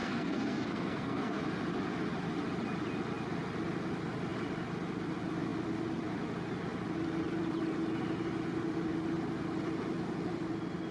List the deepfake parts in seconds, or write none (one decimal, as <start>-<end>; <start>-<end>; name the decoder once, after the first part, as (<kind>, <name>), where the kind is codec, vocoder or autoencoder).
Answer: 0.0-1.4 (codec, SNAC)